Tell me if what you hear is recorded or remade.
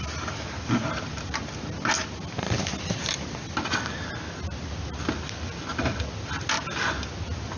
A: recorded